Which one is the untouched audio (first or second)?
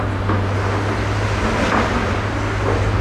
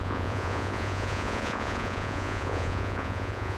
first